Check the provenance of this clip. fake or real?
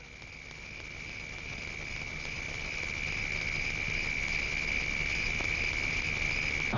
real